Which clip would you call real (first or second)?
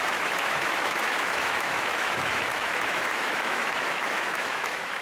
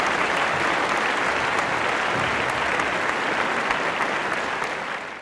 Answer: second